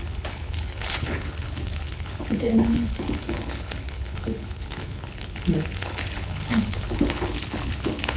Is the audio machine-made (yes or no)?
yes